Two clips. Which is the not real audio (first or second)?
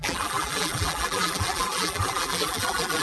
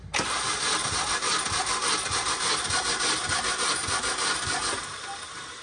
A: first